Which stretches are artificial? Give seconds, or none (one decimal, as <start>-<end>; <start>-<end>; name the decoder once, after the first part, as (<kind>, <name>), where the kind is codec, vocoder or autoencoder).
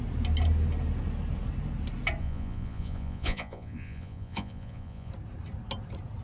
2.2-5.1 (vocoder, Vocos)